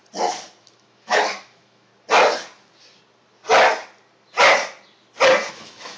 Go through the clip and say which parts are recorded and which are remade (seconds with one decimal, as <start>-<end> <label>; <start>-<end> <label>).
0.0-0.6 recorded; 0.6-1.9 remade; 1.9-5.5 recorded; 5.5-6.0 remade